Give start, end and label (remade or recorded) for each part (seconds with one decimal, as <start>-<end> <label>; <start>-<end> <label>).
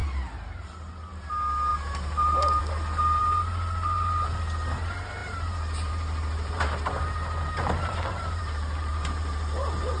0.0-1.7 recorded; 1.7-2.6 remade; 2.6-3.2 recorded; 3.2-4.4 remade; 4.4-5.2 recorded; 5.2-10.0 remade